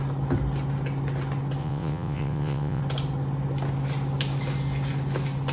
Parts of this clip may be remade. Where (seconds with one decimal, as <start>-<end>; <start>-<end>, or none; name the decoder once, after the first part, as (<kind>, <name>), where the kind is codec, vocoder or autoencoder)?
1.6-2.8 (vocoder, WaveNeXt)